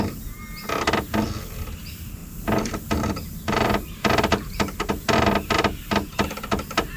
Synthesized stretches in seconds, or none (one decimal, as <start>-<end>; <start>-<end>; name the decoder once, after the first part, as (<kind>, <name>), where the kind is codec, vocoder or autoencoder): 2.2-4.9 (vocoder, BigVGAN v2)